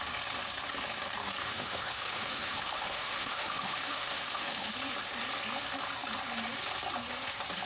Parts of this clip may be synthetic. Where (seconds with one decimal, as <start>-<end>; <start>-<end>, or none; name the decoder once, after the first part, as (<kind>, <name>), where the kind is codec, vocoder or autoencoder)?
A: 1.4-4.7 (autoencoder, DAC-VAE)